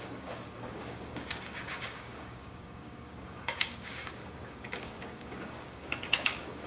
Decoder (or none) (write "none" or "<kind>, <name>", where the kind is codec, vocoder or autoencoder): codec, DAC